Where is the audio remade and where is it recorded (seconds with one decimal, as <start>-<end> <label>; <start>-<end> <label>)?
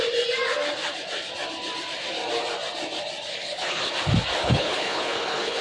0.0-3.3 recorded; 3.3-3.9 remade; 3.9-4.4 recorded; 4.4-5.6 remade